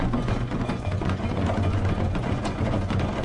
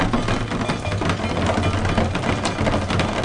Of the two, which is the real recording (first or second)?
second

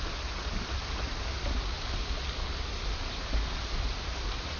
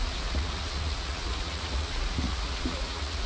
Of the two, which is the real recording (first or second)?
first